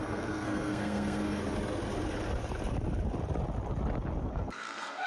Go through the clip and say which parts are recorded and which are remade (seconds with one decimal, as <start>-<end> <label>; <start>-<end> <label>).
0.0-1.4 remade; 1.4-4.2 recorded; 4.2-5.1 remade